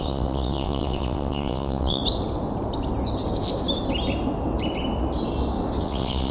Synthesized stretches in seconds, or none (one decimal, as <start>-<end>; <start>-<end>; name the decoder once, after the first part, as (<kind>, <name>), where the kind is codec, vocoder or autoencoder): 0.0-2.0 (vocoder, WaveNeXt); 5.8-6.3